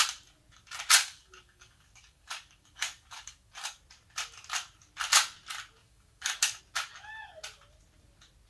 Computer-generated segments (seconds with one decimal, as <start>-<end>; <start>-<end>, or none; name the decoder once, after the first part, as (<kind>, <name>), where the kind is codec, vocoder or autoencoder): 1.0-3.8 (codec, DAC); 5.8-6.6